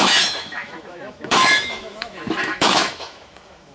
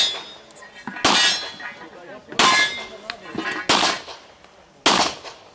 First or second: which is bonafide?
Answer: second